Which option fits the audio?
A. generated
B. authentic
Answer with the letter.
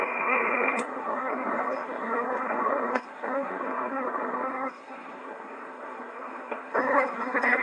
A